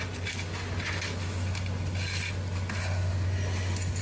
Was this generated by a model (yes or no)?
no